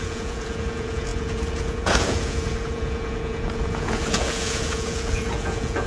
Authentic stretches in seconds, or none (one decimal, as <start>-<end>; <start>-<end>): none